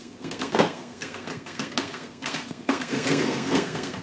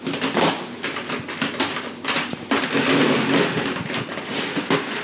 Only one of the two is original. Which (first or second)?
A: second